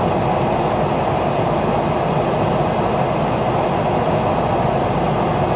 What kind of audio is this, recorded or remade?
recorded